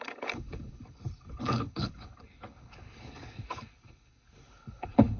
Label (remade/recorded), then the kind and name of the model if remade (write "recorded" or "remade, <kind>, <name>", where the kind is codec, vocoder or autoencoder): remade, codec, HILCodec